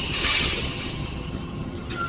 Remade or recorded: remade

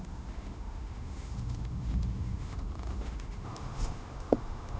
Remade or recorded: remade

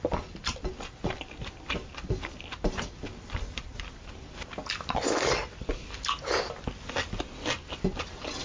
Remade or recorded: recorded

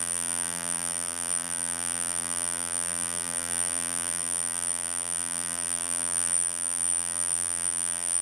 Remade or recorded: remade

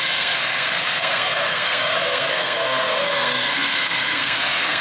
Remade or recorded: remade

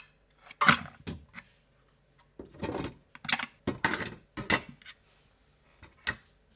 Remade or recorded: recorded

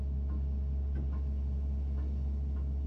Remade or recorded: recorded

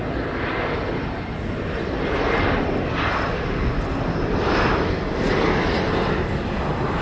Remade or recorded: recorded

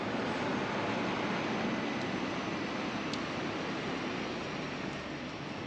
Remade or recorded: recorded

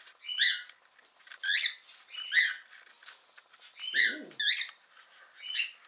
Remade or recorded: recorded